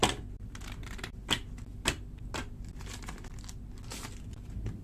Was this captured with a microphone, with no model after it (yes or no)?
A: yes